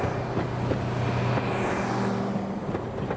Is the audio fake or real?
real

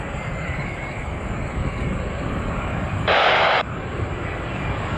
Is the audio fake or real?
fake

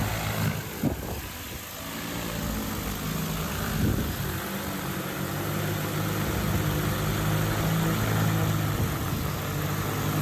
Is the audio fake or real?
real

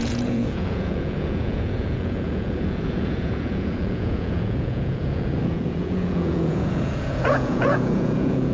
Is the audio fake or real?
fake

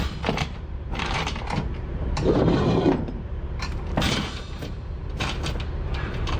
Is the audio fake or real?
fake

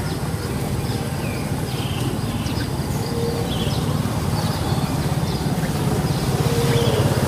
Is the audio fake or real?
real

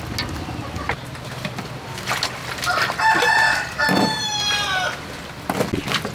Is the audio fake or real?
real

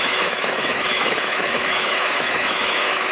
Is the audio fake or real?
fake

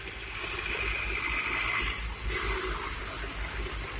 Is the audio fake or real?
real